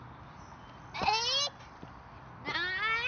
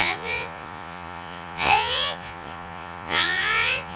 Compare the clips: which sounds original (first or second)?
first